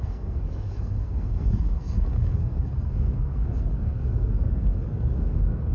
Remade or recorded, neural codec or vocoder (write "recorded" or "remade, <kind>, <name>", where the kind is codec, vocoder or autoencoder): remade, codec, SNAC